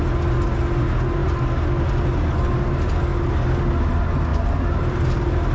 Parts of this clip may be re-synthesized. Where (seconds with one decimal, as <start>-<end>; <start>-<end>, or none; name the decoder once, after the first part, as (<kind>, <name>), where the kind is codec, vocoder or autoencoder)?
4.3-5.5 (vocoder, BigVGAN v2)